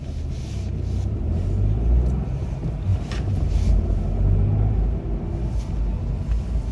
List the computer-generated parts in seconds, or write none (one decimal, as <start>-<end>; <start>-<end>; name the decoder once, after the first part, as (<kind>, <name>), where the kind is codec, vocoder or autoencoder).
none